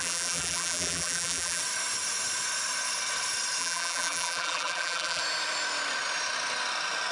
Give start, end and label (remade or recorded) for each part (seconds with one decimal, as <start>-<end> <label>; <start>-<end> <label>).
0.0-1.6 remade; 1.6-3.6 recorded; 3.6-5.2 remade; 5.2-7.1 recorded